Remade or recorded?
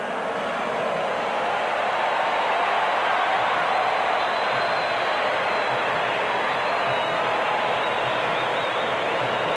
recorded